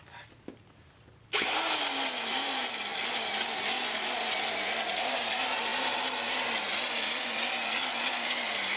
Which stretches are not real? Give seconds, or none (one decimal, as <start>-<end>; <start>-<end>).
none